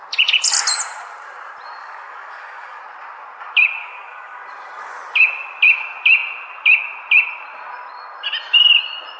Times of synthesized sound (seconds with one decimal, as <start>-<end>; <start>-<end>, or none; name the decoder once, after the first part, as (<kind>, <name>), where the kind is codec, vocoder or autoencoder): 1.8-2.8 (codec, DAC); 3.8-4.4